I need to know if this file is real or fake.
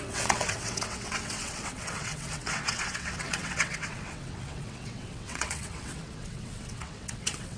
fake